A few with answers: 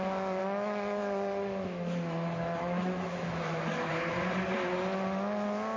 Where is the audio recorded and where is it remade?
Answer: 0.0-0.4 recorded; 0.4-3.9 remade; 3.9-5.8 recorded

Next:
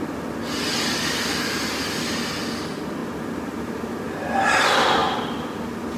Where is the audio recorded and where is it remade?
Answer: 0.0-6.0 recorded

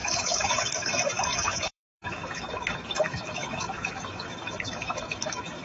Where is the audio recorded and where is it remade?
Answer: 0.0-5.6 remade

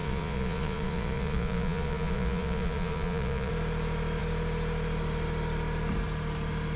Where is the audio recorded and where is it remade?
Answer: 0.0-3.5 remade; 3.5-6.8 recorded

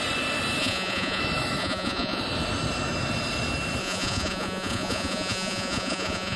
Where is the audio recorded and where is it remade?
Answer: 0.0-0.6 recorded; 0.6-1.2 remade; 1.2-1.6 recorded; 1.6-2.2 remade; 2.2-3.8 recorded; 3.8-6.4 remade

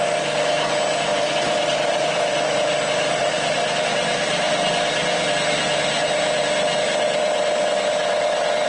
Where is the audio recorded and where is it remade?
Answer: 0.0-1.1 recorded; 1.1-5.3 remade; 5.3-8.0 recorded; 8.0-8.7 remade

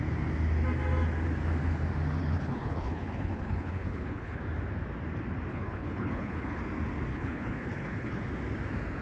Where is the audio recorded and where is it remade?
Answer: 0.0-2.2 recorded; 2.2-4.4 remade; 4.4-5.5 recorded; 5.5-6.6 remade; 6.6-7.1 recorded; 7.1-8.2 remade; 8.2-9.0 recorded